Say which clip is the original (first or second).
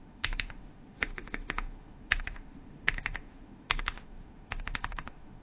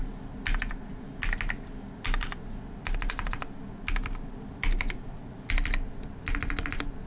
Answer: second